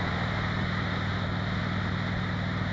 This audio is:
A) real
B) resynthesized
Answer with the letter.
A